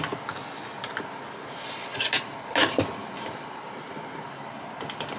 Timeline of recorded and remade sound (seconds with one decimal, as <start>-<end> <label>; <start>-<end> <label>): 0.0-5.2 recorded